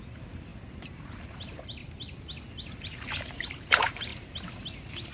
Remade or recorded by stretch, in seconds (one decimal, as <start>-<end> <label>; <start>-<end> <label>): 0.0-1.8 remade; 1.8-2.8 recorded; 2.8-4.1 remade; 4.1-5.1 recorded